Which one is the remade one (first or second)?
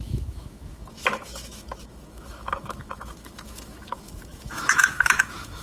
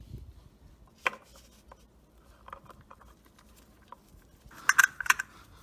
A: first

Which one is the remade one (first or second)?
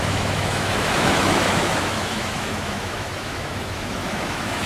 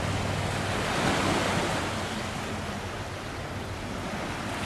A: first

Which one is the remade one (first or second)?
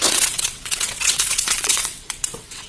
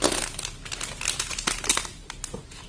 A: first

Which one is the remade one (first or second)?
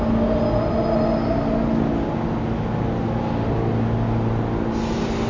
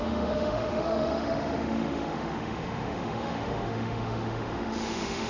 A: second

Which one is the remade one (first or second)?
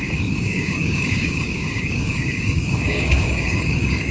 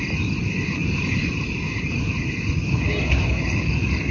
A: first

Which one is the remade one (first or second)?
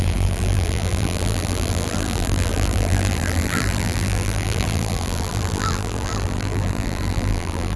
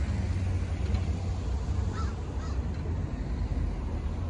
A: first